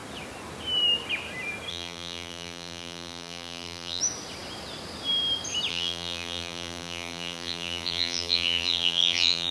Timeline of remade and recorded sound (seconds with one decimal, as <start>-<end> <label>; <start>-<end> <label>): 0.0-1.7 recorded; 1.7-4.0 remade; 4.0-5.7 recorded; 5.7-9.5 remade